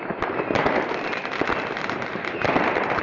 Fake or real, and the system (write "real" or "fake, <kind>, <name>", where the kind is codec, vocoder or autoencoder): real